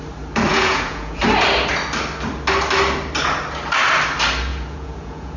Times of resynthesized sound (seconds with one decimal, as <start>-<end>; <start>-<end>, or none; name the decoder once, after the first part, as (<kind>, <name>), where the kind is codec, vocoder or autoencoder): 0.5-1.2 (vocoder, Vocos); 4.5-5.4